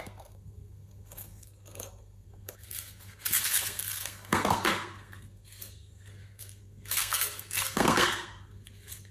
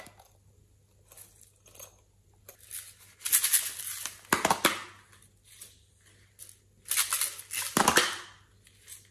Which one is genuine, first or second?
second